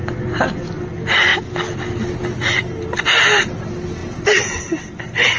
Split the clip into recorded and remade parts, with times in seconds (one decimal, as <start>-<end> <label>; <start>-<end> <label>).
0.0-5.4 recorded